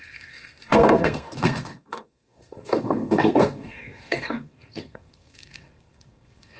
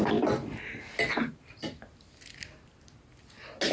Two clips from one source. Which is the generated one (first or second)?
first